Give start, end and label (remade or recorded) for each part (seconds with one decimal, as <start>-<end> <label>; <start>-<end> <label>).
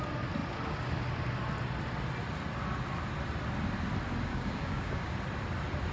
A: 0.0-4.3 recorded; 4.3-5.1 remade; 5.1-5.9 recorded